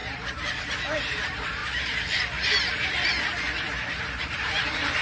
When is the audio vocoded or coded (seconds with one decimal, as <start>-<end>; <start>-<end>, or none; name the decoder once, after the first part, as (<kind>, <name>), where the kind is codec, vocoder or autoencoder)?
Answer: 0.0-1.6 (vocoder, BigVGAN v2); 4.2-5.0